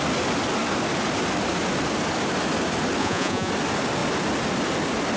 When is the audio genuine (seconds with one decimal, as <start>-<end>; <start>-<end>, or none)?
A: 0.0-3.0; 3.5-5.2